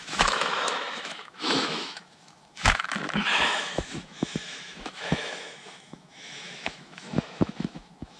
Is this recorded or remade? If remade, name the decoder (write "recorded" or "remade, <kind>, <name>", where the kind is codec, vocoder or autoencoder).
remade, autoencoder, DAC-VAE